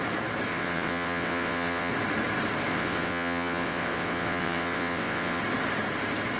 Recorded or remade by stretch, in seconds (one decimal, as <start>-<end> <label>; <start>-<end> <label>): 0.0-0.5 recorded; 0.5-1.9 remade; 1.9-2.7 recorded; 2.7-5.4 remade; 5.4-6.4 recorded